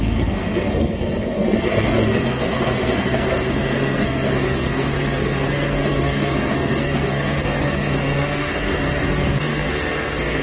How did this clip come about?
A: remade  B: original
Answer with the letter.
A